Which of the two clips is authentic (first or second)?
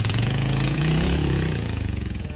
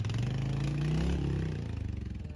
second